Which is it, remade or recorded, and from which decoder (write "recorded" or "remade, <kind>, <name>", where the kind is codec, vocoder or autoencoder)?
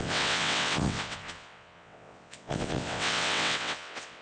remade, vocoder, WaveNeXt